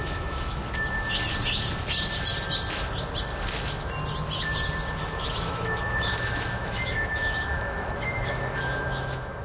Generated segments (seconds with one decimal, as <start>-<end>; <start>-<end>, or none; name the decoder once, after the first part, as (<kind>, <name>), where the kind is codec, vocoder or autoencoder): 0.0-0.6 (autoencoder, DAC-VAE); 5.0-9.4